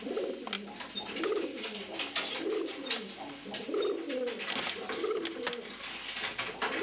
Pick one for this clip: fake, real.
real